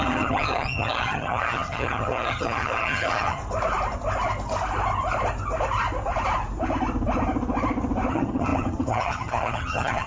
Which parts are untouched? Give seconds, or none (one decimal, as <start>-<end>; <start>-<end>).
3.4-8.1